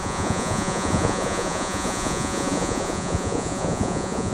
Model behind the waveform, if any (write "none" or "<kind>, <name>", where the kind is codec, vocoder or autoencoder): vocoder, Vocos